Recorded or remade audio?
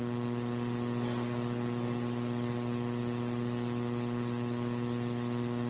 recorded